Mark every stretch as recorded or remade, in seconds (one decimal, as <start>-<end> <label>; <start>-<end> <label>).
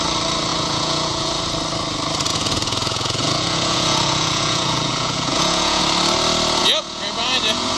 0.0-0.5 recorded; 0.5-1.4 remade; 1.4-2.3 recorded; 2.3-5.8 remade; 5.8-6.6 recorded; 6.6-7.8 remade